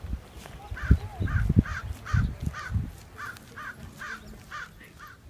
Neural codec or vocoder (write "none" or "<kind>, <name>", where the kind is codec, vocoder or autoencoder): none